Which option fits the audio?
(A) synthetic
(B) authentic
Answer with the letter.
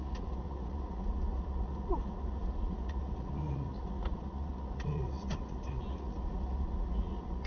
A